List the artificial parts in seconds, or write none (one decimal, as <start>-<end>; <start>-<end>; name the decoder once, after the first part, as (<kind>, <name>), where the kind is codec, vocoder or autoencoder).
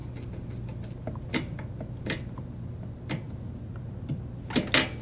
0.0-3.0 (vocoder, BigVGAN v2)